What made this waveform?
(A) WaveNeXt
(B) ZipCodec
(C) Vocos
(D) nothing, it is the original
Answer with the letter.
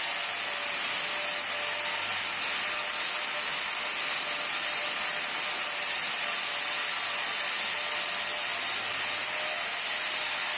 D